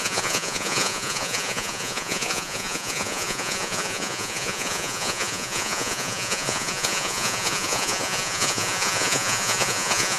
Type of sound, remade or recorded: remade